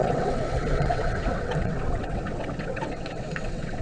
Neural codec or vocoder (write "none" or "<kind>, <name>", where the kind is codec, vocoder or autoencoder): vocoder, WaveNeXt